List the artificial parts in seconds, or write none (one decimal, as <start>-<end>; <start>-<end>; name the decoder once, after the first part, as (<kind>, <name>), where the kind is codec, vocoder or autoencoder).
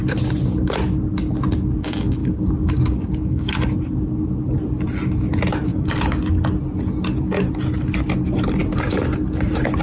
2.2-3.5 (codec, DAC); 5.7-6.2